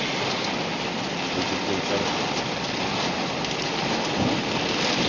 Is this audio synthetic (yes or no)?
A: no